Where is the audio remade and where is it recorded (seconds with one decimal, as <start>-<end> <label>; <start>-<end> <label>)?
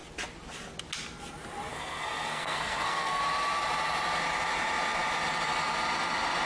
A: 0.0-1.7 recorded; 1.7-3.2 remade; 3.2-6.5 recorded